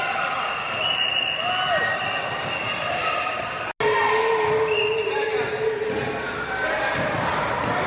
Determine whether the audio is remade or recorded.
recorded